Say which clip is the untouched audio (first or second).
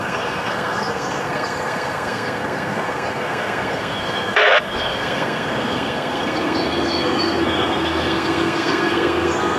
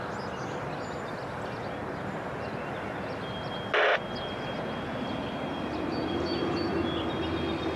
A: second